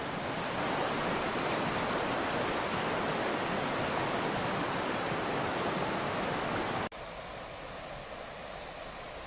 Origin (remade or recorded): recorded